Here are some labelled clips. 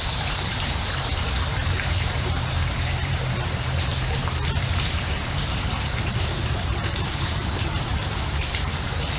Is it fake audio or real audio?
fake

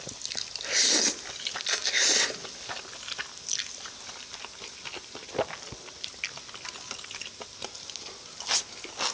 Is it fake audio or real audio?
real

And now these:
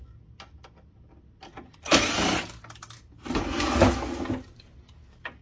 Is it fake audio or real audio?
real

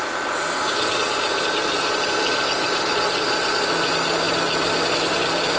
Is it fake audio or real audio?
real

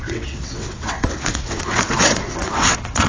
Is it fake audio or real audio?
fake